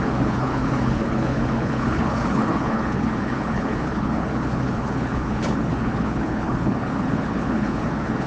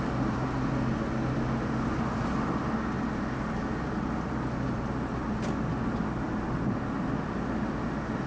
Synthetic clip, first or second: first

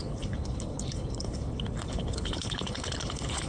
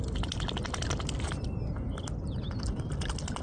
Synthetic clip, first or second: first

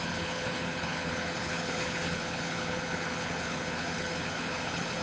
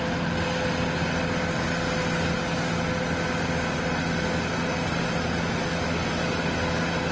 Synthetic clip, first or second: first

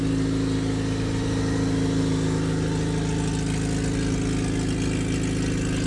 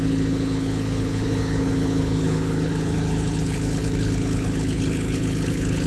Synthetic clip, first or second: second